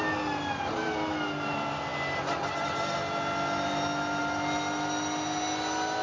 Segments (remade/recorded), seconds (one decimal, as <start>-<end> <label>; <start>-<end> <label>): 0.0-6.0 recorded